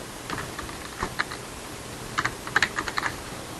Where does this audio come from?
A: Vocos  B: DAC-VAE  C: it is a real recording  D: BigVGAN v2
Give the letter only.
C